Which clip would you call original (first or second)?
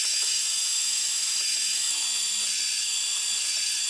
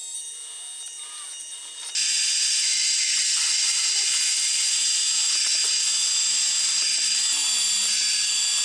second